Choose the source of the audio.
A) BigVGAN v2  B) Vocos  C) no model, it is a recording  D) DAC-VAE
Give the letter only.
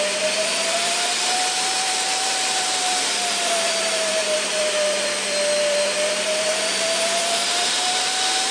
A